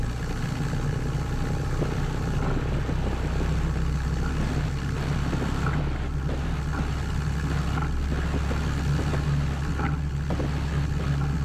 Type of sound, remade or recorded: recorded